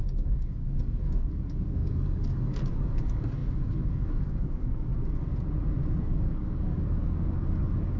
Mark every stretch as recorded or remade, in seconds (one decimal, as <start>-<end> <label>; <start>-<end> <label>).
0.0-4.9 remade; 4.9-6.0 recorded; 6.0-8.0 remade